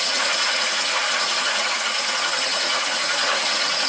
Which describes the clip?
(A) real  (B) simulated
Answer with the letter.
B